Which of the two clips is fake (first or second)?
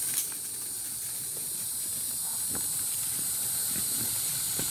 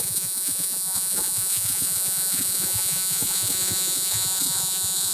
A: second